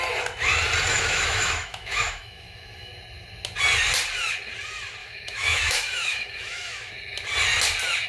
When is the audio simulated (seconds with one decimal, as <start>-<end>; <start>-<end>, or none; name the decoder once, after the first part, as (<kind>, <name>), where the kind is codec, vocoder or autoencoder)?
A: 0.9-2.9 (autoencoder, DAC-VAE); 5.0-6.9